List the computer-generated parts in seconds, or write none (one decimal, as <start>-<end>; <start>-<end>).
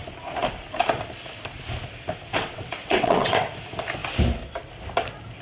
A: 2.3-3.5